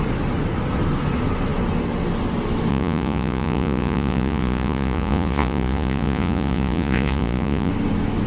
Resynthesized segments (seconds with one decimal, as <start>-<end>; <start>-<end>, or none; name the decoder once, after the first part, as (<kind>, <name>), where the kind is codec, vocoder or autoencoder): 2.7-7.7 (vocoder, Vocos)